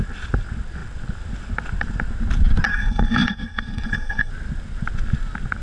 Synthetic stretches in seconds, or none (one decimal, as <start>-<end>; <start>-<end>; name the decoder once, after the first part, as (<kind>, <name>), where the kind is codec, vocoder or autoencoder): 2.7-4.3 (codec, SNAC)